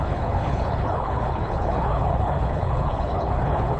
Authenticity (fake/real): fake